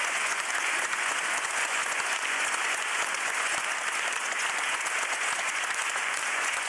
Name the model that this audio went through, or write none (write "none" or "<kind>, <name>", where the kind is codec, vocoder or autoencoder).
vocoder, Vocos